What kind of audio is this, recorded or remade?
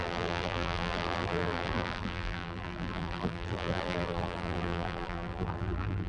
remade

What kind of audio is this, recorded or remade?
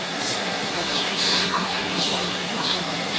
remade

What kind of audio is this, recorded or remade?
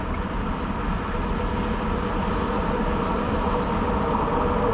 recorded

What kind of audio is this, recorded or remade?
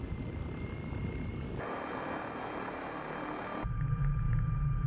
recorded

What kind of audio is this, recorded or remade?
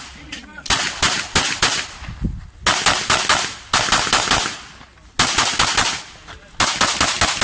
recorded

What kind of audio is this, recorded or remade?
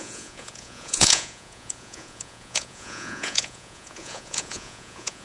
remade